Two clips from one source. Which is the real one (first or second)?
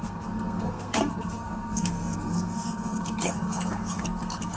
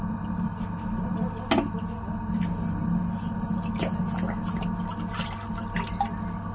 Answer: second